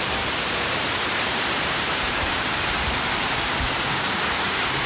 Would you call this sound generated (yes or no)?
yes